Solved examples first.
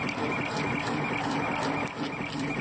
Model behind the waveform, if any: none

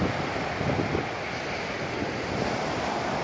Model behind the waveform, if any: none